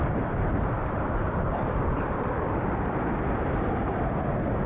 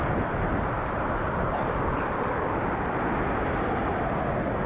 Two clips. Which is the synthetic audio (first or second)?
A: first